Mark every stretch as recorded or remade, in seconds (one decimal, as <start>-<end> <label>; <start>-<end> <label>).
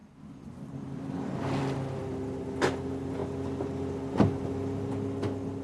0.0-5.6 recorded